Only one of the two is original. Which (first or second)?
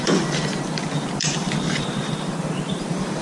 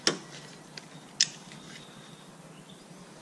second